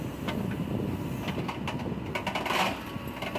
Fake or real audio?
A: real